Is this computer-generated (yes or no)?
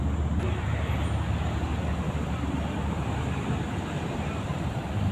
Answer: no